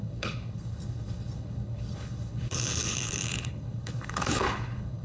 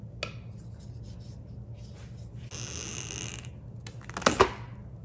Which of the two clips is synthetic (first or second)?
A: first